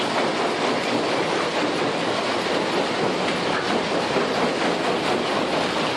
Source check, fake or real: real